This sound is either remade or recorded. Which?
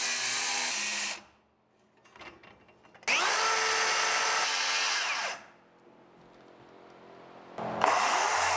recorded